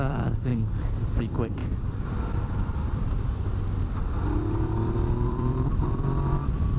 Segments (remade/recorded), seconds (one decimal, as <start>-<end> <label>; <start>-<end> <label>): 0.0-6.8 remade